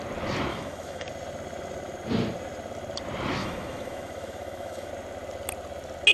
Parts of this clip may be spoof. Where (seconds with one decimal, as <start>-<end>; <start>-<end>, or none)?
0.5-1.1; 3.4-4.9